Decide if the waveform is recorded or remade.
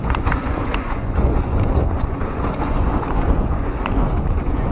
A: remade